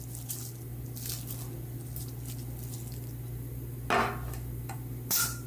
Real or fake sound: real